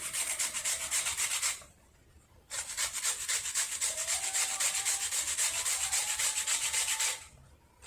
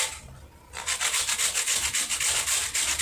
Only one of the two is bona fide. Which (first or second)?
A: second